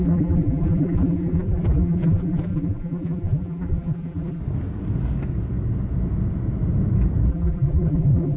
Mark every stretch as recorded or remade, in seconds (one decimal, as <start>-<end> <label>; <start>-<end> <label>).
0.0-4.4 remade; 4.4-7.3 recorded; 7.3-8.4 remade